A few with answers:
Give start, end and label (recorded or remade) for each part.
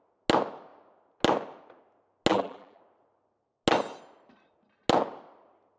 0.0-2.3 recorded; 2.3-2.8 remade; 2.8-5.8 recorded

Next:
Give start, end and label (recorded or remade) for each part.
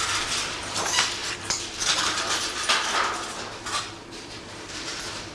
0.0-5.3 remade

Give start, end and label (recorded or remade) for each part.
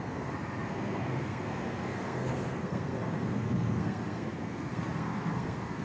0.0-5.8 remade